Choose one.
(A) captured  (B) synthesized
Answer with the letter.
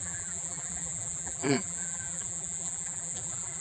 B